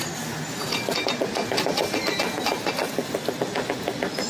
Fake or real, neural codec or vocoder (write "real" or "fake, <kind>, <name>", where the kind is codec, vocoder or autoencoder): real